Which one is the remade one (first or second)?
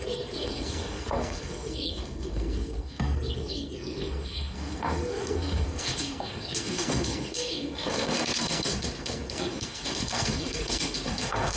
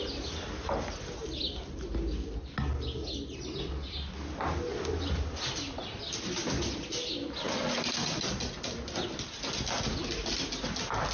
first